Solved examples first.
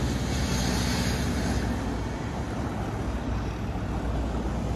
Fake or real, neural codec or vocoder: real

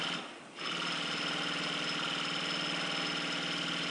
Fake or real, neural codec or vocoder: real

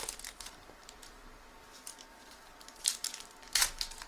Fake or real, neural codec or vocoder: fake, vocoder, BigVGAN v2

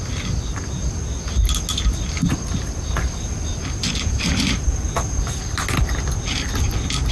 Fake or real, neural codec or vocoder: real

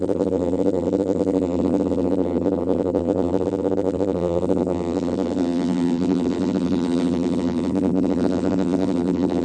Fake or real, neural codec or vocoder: fake, vocoder, BigVGAN v2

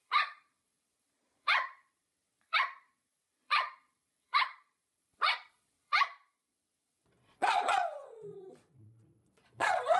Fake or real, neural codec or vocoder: fake, vocoder, Vocos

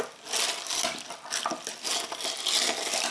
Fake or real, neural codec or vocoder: real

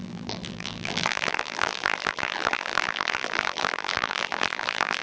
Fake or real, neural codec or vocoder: fake, vocoder, BigVGAN v2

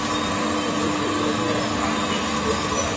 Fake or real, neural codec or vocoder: real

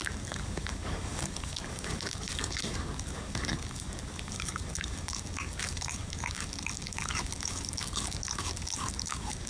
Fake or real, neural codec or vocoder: fake, codec, DAC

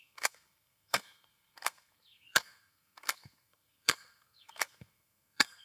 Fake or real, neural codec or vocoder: fake, codec, SNAC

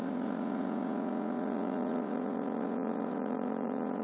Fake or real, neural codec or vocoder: fake, vocoder, Vocos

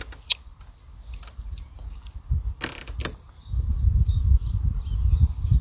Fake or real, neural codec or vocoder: real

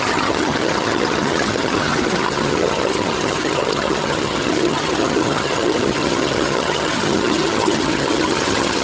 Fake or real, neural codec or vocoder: fake, vocoder, HiFi-GAN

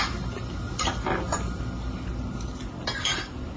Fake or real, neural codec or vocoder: real